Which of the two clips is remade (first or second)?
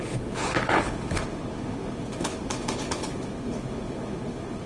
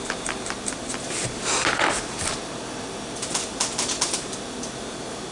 first